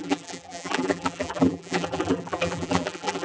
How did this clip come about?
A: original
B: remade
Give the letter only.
B